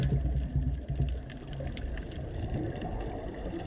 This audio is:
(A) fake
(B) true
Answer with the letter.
B